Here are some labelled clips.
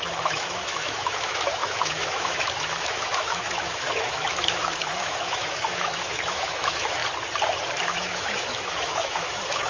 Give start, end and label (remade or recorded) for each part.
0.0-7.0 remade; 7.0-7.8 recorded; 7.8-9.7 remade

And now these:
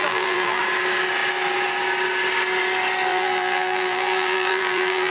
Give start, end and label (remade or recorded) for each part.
0.0-0.6 remade; 0.6-3.1 recorded; 3.1-5.1 remade